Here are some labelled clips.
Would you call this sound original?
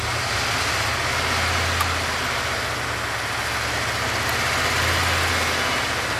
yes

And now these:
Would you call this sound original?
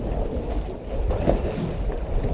yes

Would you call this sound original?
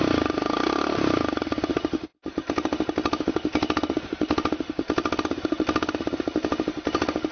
yes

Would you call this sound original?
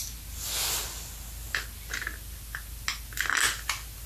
yes